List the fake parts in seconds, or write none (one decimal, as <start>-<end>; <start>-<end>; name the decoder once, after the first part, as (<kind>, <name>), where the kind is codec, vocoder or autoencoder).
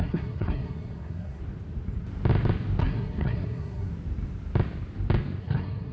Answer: 0.0-1.4 (codec, SNAC); 2.8-3.9; 5.4-5.9